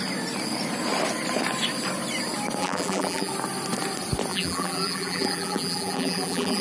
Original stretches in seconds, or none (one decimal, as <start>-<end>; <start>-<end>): 0.0-2.6; 3.3-4.3